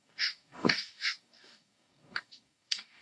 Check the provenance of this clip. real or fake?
fake